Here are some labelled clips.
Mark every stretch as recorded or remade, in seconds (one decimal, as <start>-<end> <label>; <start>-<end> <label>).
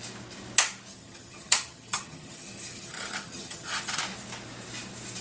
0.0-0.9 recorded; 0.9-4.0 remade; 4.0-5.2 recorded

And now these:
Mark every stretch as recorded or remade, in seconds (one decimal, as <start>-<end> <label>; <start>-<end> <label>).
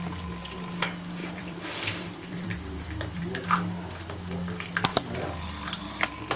0.0-1.2 recorded; 1.2-3.4 remade; 3.4-6.4 recorded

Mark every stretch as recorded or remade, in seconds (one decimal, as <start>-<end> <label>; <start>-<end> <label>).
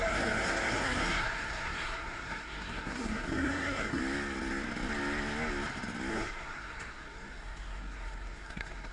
0.0-4.0 remade; 4.0-6.1 recorded; 6.1-8.9 remade